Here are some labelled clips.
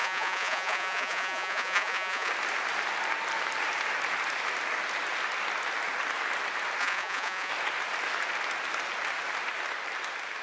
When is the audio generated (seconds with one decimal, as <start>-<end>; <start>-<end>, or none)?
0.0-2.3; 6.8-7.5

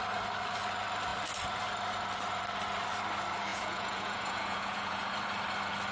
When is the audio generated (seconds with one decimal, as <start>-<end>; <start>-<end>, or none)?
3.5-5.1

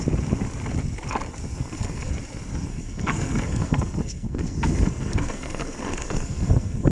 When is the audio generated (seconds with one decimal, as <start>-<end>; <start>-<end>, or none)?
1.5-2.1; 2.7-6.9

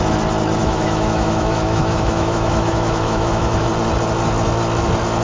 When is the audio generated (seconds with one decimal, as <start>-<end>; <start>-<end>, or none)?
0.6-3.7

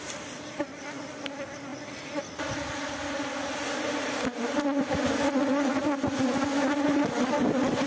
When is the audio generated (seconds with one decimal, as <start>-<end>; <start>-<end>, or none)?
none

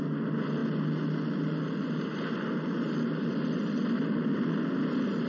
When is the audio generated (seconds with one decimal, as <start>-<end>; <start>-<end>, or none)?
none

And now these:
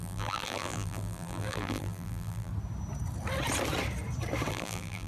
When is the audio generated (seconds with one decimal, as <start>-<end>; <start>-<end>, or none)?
0.0-2.5; 4.5-5.1

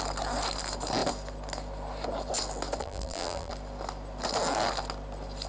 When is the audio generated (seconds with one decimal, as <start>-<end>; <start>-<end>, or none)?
2.8-3.5